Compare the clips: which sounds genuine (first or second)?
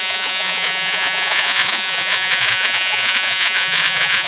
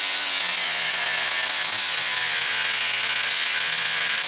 second